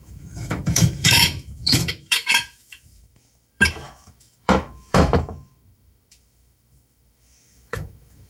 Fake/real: fake